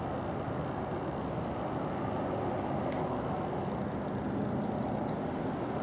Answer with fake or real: real